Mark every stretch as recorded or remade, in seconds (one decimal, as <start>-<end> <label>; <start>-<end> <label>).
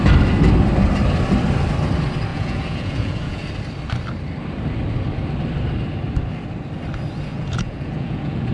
0.0-2.3 recorded; 2.3-3.4 remade; 3.4-7.3 recorded; 7.3-8.5 remade